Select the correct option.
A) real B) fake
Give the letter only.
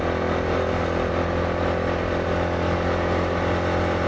A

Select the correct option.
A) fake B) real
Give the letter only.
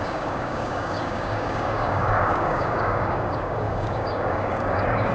A